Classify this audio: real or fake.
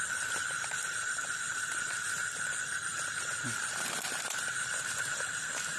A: real